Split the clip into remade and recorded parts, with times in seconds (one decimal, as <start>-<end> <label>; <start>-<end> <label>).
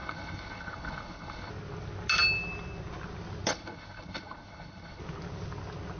0.0-1.5 remade; 1.5-3.5 recorded; 3.5-5.0 remade; 5.0-6.0 recorded